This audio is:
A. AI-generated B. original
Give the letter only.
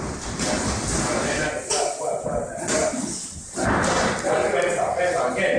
B